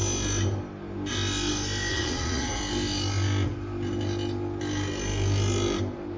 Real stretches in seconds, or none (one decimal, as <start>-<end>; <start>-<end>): 0.0-1.9; 2.6-6.2